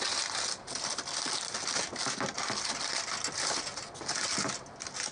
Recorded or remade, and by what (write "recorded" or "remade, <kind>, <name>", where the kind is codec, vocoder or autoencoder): recorded